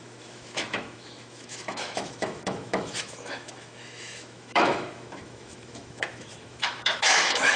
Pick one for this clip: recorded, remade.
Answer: remade